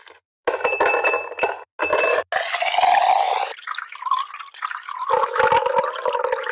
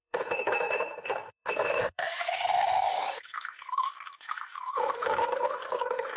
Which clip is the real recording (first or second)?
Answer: first